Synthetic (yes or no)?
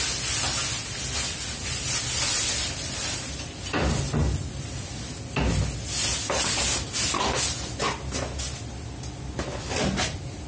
no